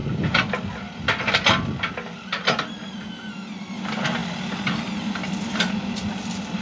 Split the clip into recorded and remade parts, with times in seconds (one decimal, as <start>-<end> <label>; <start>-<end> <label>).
0.0-6.6 recorded